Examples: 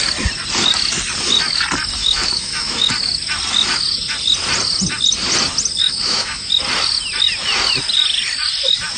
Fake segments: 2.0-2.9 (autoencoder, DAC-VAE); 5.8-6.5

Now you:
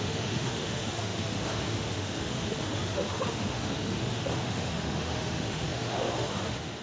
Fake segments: 0.0-6.8 (autoencoder, DAC-VAE)